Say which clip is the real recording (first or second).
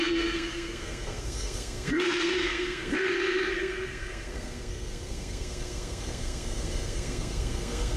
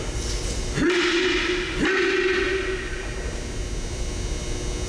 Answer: second